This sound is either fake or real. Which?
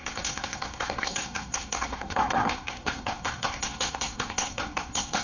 fake